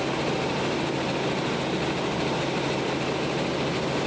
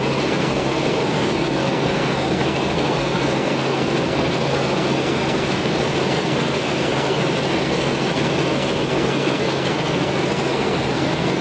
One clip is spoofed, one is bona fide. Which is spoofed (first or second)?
second